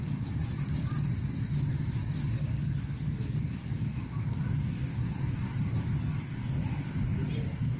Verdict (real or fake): real